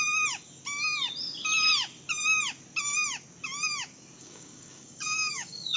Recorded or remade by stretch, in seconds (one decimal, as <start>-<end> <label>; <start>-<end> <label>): 0.0-4.2 recorded; 4.2-5.8 remade